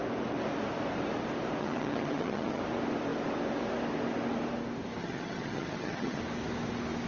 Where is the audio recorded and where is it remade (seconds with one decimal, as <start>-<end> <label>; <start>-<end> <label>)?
0.0-1.6 recorded; 1.6-2.6 remade; 2.6-5.0 recorded; 5.0-6.2 remade; 6.2-7.1 recorded